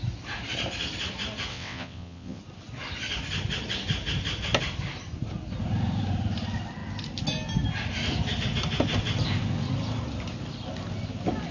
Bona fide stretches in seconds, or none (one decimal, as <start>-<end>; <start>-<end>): 0.0-1.5; 2.4-11.5